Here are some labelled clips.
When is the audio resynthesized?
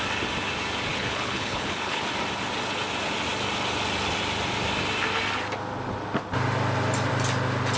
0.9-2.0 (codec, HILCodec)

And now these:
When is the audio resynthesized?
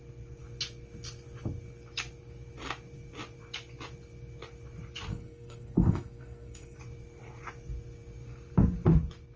5.1-6.8 (codec, SNAC)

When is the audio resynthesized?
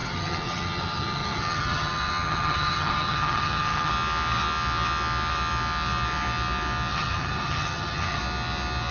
0.0-3.9 (vocoder, HiFi-GAN); 6.9-8.2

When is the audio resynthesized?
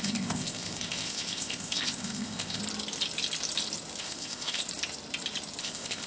0.0-2.6 (codec, ZipCodec); 4.0-4.6; 5.6-6.1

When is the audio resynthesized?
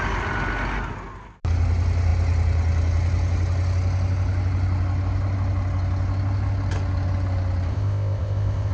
7.7-8.7 (codec, ZipCodec)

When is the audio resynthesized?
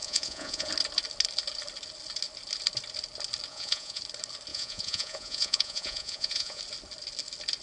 0.0-0.7 (vocoder, Vocos); 3.5-4.0; 4.5-6.6